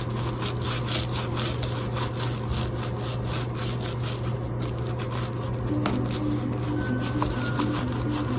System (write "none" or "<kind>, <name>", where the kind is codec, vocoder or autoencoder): none